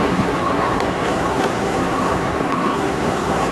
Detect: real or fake fake